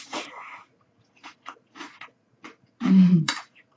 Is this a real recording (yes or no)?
no